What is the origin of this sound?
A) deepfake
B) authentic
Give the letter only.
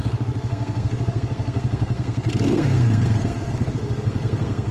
A